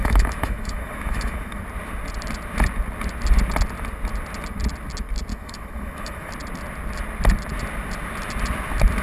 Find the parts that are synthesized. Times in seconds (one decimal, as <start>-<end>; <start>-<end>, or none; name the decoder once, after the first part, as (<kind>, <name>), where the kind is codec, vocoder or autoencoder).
0.0-1.6 (autoencoder, DAC-VAE); 5.3-6.3